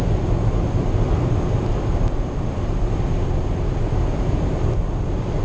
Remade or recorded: recorded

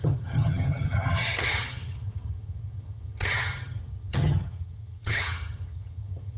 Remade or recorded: remade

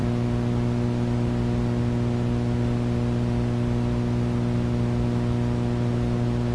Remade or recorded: recorded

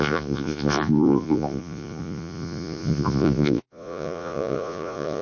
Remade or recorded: remade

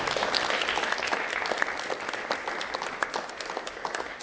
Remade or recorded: recorded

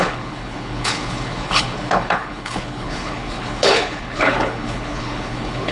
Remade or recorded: remade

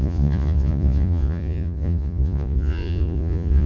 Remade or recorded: remade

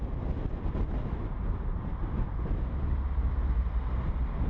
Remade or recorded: recorded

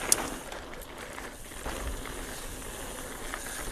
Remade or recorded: recorded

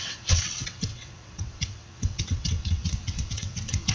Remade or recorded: remade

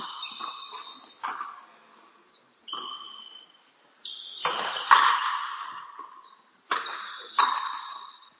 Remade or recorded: recorded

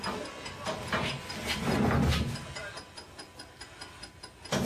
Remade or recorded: recorded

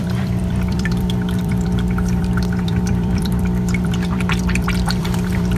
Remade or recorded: remade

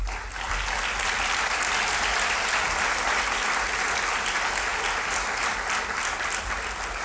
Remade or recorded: recorded